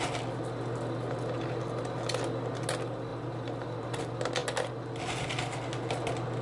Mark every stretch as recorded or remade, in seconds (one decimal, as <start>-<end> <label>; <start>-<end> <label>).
0.0-3.1 recorded; 3.1-4.0 remade; 4.0-6.4 recorded